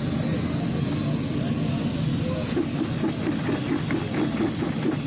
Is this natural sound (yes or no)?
yes